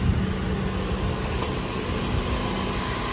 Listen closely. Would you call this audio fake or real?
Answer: real